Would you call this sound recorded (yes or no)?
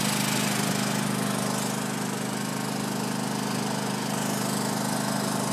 yes